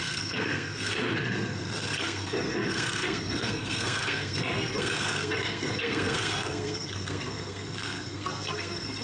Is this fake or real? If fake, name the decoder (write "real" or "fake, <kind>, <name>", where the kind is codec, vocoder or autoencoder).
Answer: fake, codec, SNAC